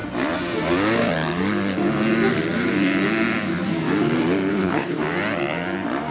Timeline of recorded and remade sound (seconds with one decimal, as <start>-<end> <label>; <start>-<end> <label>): 0.0-4.5 recorded; 4.5-5.0 remade; 5.0-6.1 recorded